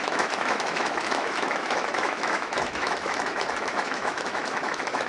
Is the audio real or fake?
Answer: fake